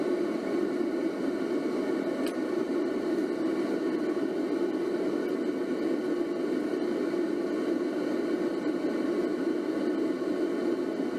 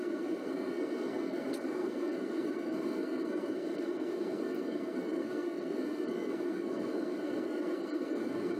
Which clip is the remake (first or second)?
second